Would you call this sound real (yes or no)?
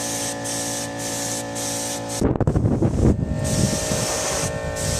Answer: yes